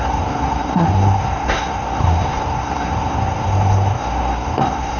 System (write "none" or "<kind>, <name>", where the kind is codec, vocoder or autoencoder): codec, SNAC